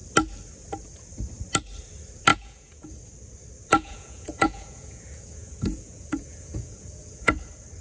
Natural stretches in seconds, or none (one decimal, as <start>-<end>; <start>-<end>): 0.0-2.3; 2.9-3.7; 7.3-7.8